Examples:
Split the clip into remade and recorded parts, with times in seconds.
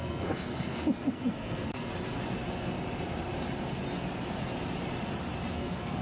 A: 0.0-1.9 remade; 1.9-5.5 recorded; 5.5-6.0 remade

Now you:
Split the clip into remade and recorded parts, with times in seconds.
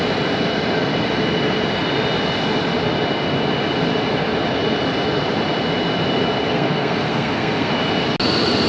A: 0.0-6.5 recorded; 6.5-7.7 remade; 7.7-8.7 recorded